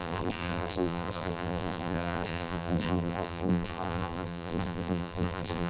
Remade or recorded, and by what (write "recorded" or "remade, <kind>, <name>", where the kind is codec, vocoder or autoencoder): remade, vocoder, BigVGAN v2